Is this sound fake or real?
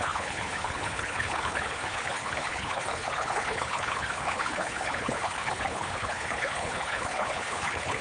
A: fake